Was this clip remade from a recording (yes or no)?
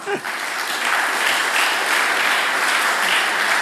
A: no